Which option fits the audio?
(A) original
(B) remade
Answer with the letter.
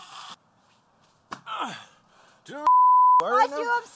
A